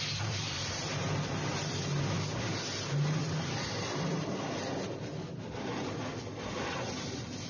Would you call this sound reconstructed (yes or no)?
no